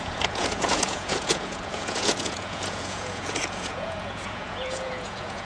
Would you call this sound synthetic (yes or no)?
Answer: yes